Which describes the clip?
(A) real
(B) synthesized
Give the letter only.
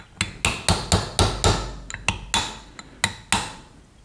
A